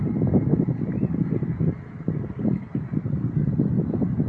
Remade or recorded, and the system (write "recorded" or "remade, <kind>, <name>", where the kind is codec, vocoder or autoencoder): recorded